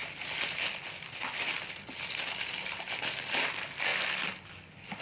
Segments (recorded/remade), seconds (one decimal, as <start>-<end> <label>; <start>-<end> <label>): 0.0-5.0 recorded